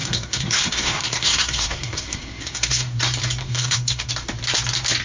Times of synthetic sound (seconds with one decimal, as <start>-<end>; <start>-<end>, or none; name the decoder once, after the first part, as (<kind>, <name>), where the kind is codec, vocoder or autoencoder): 0.0-3.0 (codec, SNAC); 3.4-4.1